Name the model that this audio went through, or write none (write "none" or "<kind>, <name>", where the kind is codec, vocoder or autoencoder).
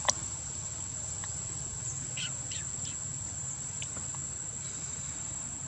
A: none